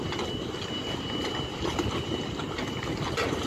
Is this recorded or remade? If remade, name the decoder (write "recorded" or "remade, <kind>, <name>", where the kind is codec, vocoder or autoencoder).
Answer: recorded